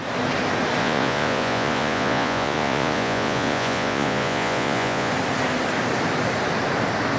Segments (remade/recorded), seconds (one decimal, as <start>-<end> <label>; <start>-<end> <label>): 0.0-0.8 recorded; 0.8-5.1 remade; 5.1-7.2 recorded